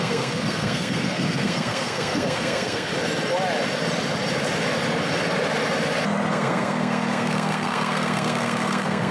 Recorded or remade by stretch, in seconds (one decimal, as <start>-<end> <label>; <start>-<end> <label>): 0.0-2.9 remade; 2.9-6.3 recorded; 6.3-9.1 remade